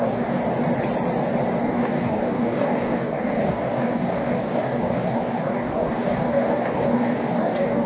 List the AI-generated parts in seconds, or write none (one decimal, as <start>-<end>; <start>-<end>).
0.0-0.4; 1.6-7.9